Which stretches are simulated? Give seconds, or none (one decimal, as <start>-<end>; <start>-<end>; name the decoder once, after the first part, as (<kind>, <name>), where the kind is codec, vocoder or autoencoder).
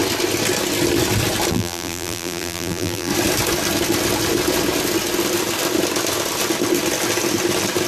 1.5-3.1 (vocoder, BigVGAN v2)